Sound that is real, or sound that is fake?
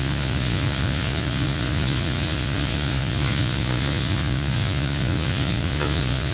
fake